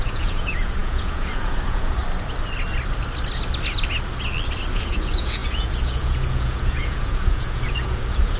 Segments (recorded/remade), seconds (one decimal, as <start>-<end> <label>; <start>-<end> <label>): 0.0-2.0 remade; 2.0-4.7 recorded; 4.7-8.4 remade

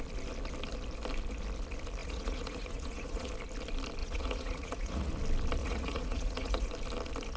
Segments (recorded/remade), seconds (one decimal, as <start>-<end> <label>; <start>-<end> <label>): 0.0-2.0 recorded; 2.0-3.3 remade; 3.3-4.0 recorded; 4.0-5.1 remade; 5.1-5.6 recorded; 5.6-6.7 remade; 6.7-7.4 recorded

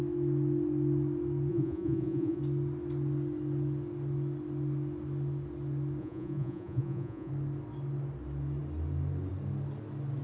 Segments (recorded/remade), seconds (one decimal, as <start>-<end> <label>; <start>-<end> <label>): 0.0-1.5 recorded; 1.5-2.4 remade; 2.4-6.0 recorded; 6.0-7.3 remade; 7.3-10.2 recorded

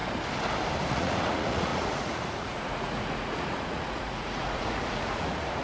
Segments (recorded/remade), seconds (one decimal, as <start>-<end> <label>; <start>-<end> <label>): 0.0-0.9 recorded; 0.9-5.6 remade

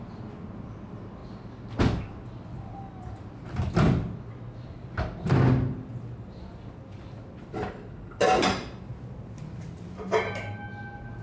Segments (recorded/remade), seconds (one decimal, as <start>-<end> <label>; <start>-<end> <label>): 0.0-11.2 recorded

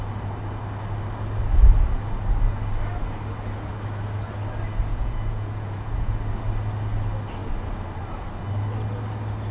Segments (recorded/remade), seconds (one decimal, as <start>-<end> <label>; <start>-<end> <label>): 0.0-4.9 recorded; 4.9-6.1 remade; 6.1-9.5 recorded

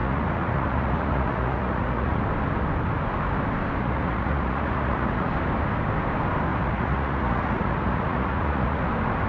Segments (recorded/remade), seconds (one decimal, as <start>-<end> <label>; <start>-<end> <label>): 0.0-2.2 remade; 2.2-3.8 recorded; 3.8-5.3 remade; 5.3-6.5 recorded; 6.5-8.9 remade; 8.9-9.3 recorded